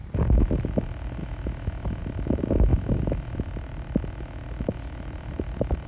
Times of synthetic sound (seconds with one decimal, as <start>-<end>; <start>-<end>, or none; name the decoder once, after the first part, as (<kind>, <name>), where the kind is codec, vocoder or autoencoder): 1.2-2.0 (autoencoder, DAC-VAE); 2.7-3.4